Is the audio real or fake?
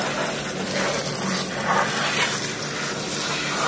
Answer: real